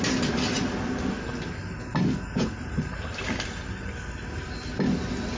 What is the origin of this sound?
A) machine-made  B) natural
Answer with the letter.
B